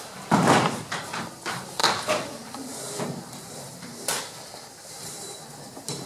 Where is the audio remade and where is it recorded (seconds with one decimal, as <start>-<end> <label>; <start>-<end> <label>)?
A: 0.0-1.8 remade; 1.8-3.0 recorded; 3.0-4.1 remade; 4.1-5.0 recorded; 5.0-6.1 remade